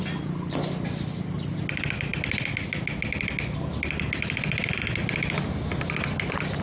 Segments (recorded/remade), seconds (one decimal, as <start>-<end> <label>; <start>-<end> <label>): 0.0-6.6 recorded